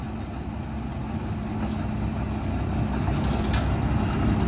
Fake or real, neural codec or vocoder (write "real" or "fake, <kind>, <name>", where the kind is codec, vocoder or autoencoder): real